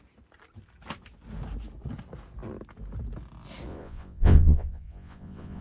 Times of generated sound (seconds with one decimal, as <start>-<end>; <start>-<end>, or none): 3.7-5.6